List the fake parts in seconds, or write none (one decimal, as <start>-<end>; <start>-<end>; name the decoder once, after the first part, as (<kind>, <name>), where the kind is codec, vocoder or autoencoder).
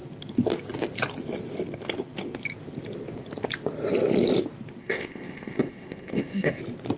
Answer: 4.8-6.6 (codec, ZipCodec)